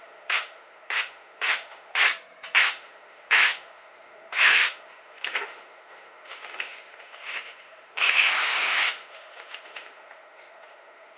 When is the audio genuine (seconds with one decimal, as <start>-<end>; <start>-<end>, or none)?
2.0-2.6

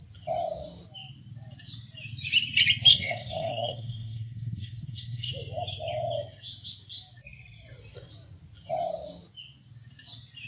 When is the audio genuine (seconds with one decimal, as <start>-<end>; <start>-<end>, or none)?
0.0-2.9; 5.3-10.5

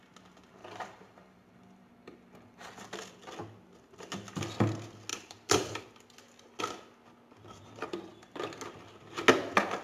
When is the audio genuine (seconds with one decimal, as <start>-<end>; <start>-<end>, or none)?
0.0-0.6; 2.7-5.1; 5.8-9.8